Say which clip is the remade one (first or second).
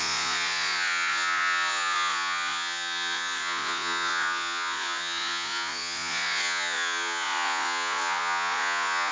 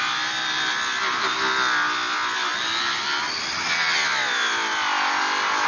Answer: first